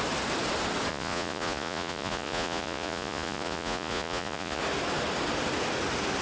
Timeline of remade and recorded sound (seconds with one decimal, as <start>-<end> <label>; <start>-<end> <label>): 0.0-0.9 recorded; 0.9-4.6 remade; 4.6-6.2 recorded